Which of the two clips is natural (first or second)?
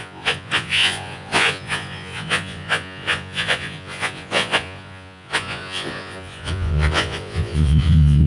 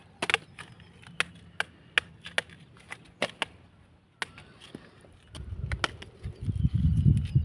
second